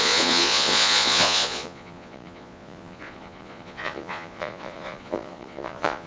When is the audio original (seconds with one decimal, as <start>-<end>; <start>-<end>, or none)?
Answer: none